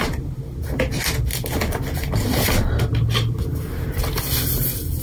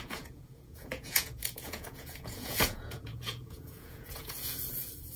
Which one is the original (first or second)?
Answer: first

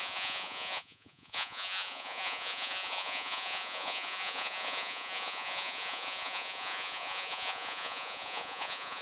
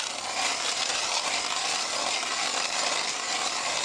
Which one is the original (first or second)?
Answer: second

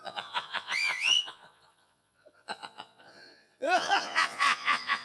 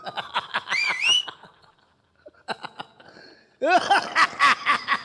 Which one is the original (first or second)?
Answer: second